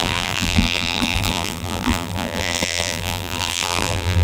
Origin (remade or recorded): remade